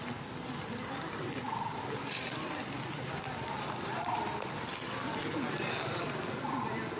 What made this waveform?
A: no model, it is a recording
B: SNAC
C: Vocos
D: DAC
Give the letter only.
A